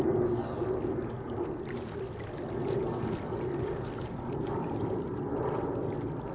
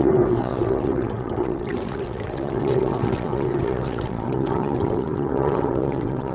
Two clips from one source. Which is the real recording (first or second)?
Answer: first